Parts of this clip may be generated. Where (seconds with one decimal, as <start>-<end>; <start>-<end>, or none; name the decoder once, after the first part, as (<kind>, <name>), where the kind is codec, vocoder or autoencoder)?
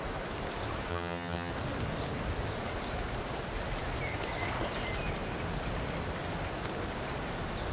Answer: 0.9-1.5 (vocoder, HiFi-GAN)